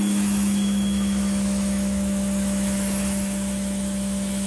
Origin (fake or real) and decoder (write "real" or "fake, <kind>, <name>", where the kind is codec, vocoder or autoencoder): fake, autoencoder, DAC-VAE